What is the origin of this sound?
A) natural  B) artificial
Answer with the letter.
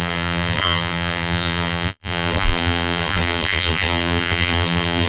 B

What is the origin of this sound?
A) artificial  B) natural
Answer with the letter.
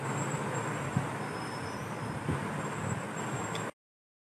B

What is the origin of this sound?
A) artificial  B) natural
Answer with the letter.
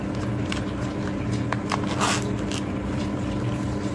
B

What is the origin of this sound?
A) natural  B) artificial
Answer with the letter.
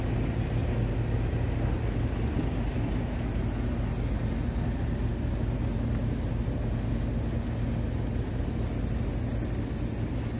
A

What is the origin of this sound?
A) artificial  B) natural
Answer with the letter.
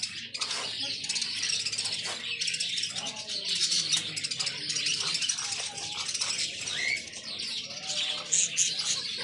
B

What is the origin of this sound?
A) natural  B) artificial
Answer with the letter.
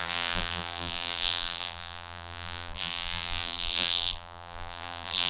B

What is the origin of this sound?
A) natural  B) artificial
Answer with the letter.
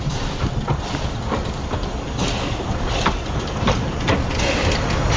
B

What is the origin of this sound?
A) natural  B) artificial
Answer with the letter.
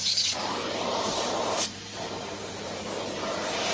B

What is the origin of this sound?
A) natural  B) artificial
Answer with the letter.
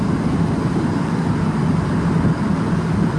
A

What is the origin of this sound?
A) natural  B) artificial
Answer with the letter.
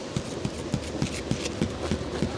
A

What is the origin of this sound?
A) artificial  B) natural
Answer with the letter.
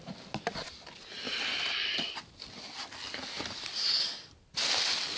B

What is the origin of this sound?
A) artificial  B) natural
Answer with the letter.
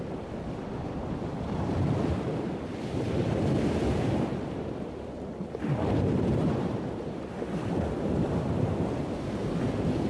B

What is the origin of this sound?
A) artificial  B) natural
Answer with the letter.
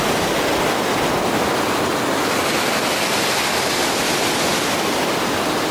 B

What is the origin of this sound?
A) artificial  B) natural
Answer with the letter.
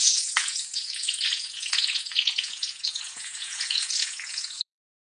A